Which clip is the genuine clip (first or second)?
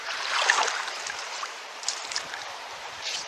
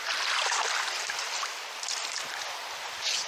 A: second